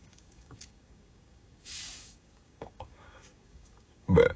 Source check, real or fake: fake